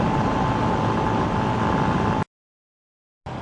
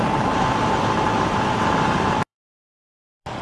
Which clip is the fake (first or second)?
second